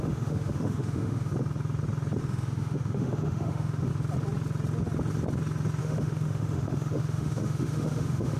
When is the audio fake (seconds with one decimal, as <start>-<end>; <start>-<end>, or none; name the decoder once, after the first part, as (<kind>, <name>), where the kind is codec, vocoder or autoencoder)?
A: 0.0-1.3 (autoencoder, DAC-VAE); 2.2-3.9; 5.8-8.4